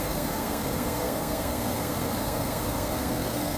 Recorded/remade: remade